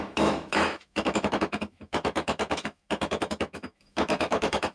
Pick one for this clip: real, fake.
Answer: fake